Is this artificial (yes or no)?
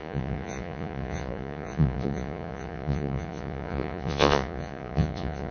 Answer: yes